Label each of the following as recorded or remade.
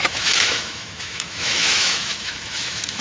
remade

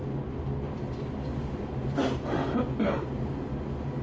recorded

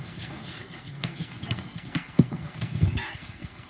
remade